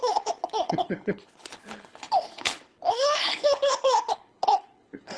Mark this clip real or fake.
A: fake